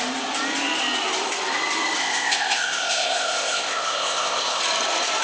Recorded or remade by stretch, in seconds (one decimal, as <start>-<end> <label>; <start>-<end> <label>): 0.0-2.0 recorded; 2.0-4.6 remade; 4.6-5.2 recorded